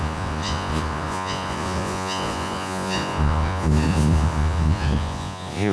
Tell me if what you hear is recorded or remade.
remade